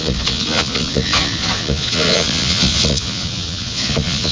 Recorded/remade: remade